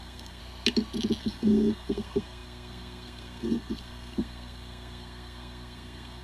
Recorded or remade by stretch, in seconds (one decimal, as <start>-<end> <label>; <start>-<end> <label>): 0.0-0.4 remade; 0.4-1.2 recorded; 1.2-6.2 remade